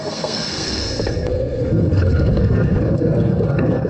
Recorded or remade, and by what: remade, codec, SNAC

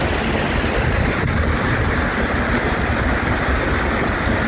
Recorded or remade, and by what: recorded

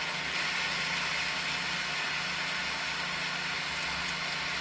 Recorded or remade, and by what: recorded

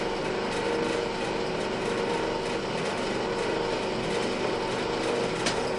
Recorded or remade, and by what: recorded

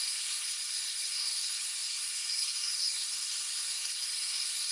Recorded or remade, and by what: remade, codec, SNAC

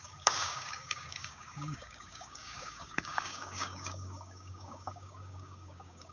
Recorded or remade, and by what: remade, codec, DAC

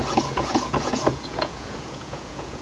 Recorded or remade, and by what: remade, vocoder, Vocos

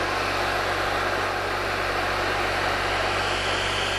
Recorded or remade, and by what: recorded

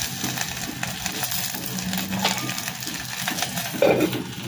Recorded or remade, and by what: recorded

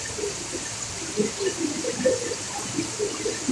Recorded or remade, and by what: recorded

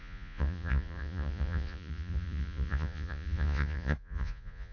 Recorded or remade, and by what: remade, vocoder, Vocos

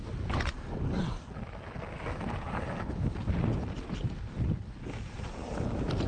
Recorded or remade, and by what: recorded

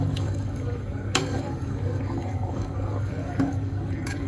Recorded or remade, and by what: remade, codec, DAC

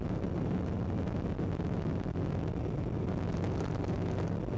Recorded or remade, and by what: recorded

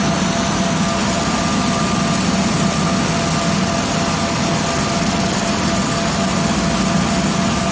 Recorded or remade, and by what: recorded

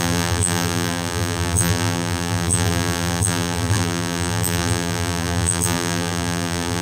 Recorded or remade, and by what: remade, vocoder, BigVGAN v2